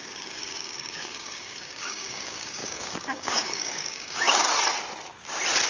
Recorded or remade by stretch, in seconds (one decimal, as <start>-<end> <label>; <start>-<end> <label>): 0.0-4.4 remade; 4.4-5.7 recorded